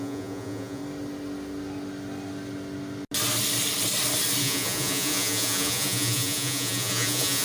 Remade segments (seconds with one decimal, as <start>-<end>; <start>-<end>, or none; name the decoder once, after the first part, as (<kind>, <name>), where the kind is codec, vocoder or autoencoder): 0.0-0.8 (vocoder, Vocos); 4.4-7.4